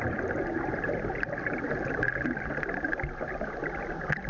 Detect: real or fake real